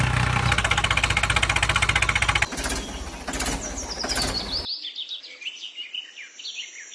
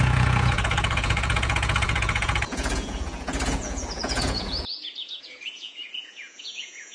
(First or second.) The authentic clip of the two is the first